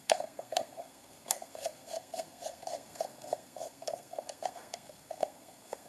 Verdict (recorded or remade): remade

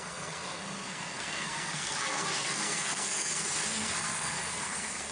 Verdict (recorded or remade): remade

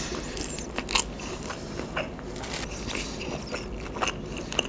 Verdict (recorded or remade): recorded